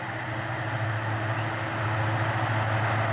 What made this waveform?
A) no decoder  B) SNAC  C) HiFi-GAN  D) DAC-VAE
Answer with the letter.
A